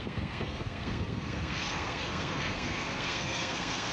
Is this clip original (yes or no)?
no